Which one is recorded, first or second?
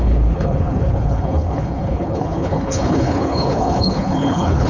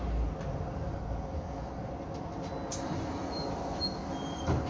second